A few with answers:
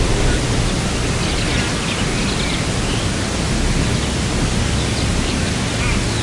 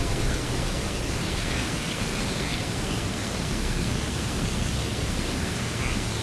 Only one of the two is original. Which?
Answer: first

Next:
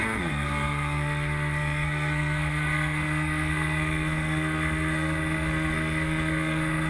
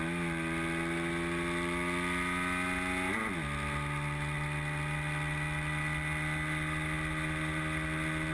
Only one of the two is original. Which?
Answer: second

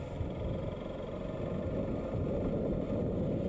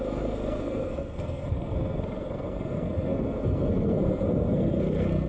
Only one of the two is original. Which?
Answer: first